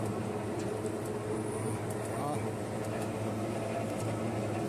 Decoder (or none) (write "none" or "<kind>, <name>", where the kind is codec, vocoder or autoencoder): none